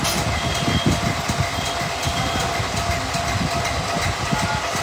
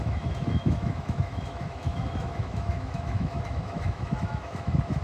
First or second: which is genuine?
first